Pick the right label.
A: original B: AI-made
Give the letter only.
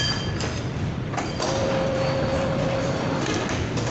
A